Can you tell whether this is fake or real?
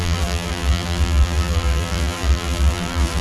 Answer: fake